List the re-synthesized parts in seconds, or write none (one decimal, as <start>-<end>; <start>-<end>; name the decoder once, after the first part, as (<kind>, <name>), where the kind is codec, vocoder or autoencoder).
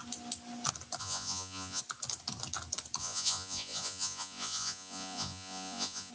1.0-1.8 (vocoder, Vocos); 3.0-6.1